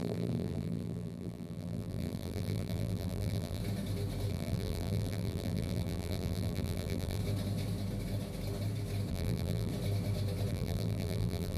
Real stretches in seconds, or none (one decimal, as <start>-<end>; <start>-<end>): 3.6-4.3; 7.2-9.1; 9.7-10.5